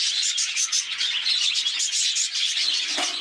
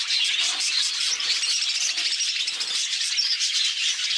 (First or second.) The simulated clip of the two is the first